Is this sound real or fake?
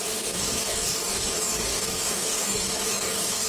fake